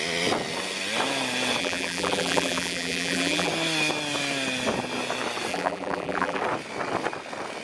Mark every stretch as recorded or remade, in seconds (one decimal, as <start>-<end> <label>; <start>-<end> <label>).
0.0-1.6 recorded; 1.6-3.5 remade; 3.5-5.5 recorded; 5.5-6.4 remade; 6.4-7.6 recorded